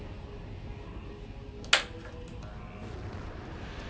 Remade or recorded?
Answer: recorded